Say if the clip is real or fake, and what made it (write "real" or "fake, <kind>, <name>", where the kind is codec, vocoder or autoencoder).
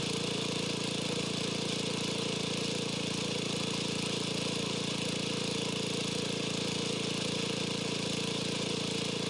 real